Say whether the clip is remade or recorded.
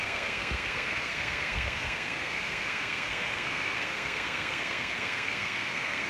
remade